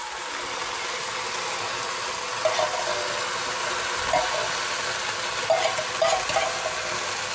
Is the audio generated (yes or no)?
no